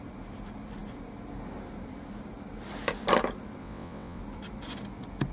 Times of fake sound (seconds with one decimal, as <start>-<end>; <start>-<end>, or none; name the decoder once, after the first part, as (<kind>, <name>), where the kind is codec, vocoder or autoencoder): 3.6-4.2 (vocoder, WaveNeXt)